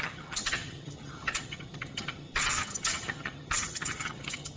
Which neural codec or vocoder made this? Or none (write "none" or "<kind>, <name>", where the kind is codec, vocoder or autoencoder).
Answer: vocoder, HiFi-GAN